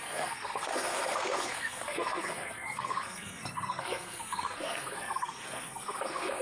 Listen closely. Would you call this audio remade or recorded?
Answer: remade